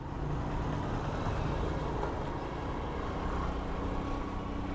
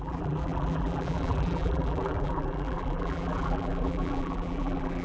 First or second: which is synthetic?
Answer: second